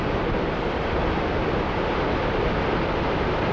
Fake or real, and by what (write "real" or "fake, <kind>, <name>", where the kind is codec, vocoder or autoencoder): real